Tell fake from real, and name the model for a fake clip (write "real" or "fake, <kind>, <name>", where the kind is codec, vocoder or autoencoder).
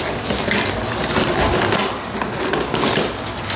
real